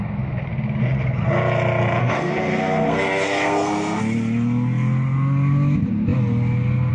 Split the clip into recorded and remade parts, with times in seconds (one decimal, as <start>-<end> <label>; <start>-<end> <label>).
0.0-2.0 recorded; 2.0-4.0 remade; 4.0-6.9 recorded